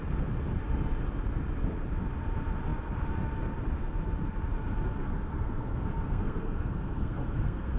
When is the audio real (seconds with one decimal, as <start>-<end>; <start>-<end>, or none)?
0.0-5.0

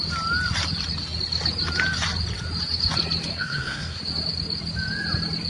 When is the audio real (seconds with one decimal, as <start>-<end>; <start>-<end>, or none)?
0.0-3.3; 4.0-5.5